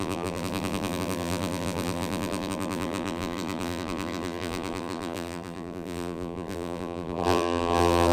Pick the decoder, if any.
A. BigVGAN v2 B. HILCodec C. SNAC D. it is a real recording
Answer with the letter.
A